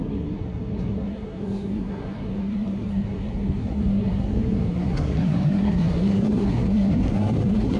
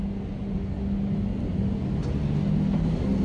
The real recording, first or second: second